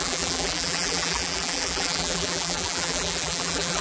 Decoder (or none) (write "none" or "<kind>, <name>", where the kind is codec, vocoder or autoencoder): vocoder, BigVGAN v2